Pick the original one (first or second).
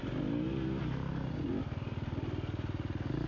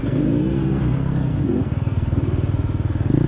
first